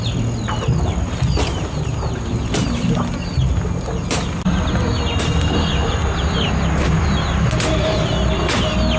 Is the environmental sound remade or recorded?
recorded